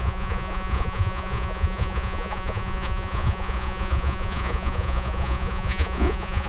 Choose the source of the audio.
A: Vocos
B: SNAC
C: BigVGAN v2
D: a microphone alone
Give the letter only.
A